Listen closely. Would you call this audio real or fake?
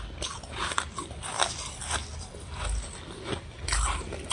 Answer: real